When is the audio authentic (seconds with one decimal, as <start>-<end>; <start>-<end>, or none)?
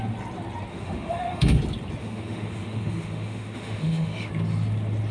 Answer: 0.0-0.7; 1.6-2.0; 4.3-5.1